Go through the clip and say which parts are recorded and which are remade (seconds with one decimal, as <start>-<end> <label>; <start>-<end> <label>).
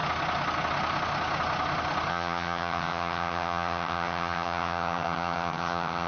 0.0-2.1 recorded; 2.1-6.1 remade